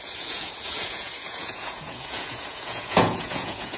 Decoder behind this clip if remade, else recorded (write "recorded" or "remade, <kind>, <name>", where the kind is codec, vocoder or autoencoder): remade, vocoder, Vocos